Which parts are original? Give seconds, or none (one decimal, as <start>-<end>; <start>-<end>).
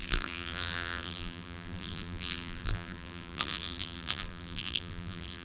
none